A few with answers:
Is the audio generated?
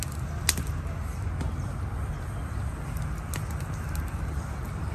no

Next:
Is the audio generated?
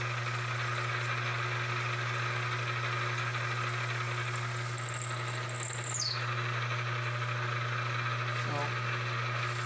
no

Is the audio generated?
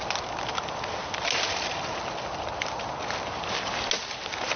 no